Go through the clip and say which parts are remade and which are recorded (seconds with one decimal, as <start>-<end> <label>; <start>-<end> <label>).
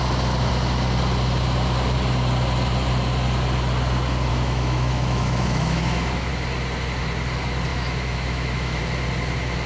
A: 0.0-4.3 recorded; 4.3-6.3 remade; 6.3-7.7 recorded; 7.7-8.8 remade; 8.8-9.7 recorded